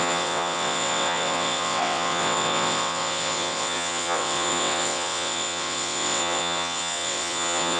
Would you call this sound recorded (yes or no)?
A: no